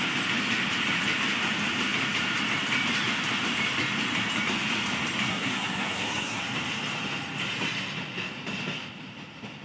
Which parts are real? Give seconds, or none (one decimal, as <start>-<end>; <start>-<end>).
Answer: 0.0-5.3; 6.4-9.6